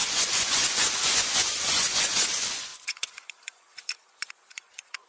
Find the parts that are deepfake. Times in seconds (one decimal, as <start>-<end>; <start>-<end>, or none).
0.0-5.1